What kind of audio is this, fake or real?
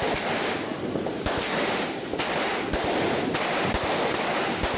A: real